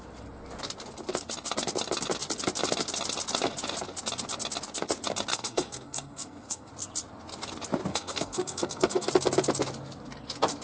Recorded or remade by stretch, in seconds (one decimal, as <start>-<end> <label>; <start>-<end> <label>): 0.0-5.3 recorded; 5.3-6.7 remade; 6.7-7.9 recorded; 7.9-9.1 remade; 9.1-10.6 recorded